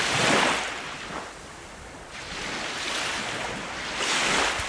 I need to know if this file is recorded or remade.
recorded